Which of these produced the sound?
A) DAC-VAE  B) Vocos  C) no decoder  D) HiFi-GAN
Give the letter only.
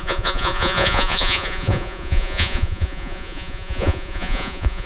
B